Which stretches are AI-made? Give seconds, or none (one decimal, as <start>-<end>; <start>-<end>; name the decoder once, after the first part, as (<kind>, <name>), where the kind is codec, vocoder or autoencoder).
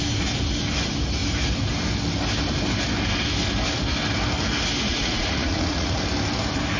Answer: 4.9-6.0 (vocoder, Vocos)